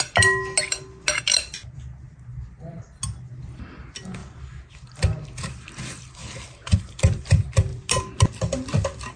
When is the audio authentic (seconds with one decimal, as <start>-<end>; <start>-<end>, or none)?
0.0-9.2